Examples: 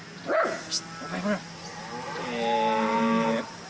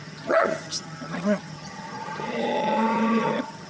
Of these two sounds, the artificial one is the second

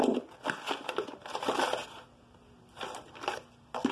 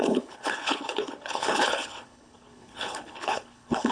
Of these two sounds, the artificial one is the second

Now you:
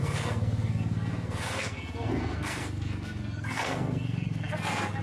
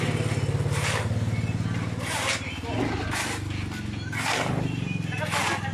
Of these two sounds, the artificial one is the first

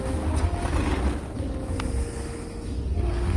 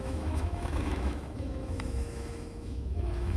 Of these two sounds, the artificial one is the second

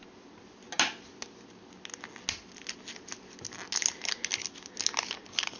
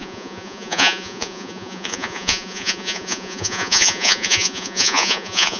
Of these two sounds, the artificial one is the second